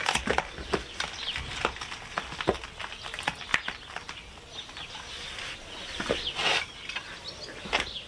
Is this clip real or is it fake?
real